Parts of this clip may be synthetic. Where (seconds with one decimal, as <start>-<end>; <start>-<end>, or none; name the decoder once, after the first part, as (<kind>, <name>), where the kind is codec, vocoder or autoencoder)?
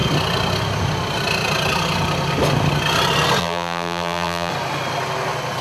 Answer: 3.4-4.5 (vocoder, BigVGAN v2)